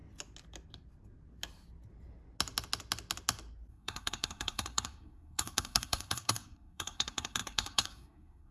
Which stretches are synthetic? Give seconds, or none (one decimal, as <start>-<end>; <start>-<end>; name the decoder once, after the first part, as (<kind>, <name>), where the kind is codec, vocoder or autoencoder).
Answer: 3.7-8.5 (codec, SNAC)